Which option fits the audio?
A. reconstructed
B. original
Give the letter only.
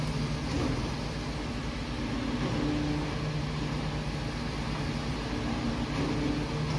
B